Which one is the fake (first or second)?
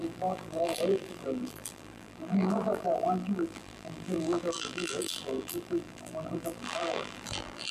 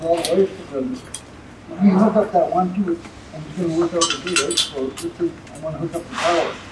first